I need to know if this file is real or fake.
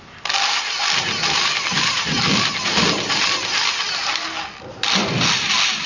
real